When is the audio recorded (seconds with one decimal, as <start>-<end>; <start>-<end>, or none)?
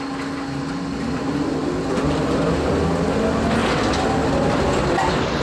0.0-5.4